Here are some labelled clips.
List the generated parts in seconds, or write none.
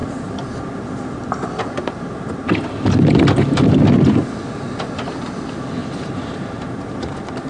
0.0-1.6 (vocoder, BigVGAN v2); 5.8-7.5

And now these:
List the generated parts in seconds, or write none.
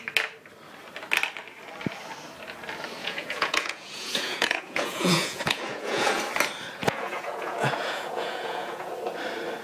3.0-6.2 (vocoder, Vocos); 6.8-8.9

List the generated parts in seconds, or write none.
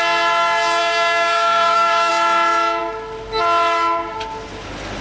0.8-2.1 (codec, DAC)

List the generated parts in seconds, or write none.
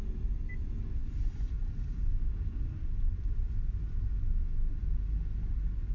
none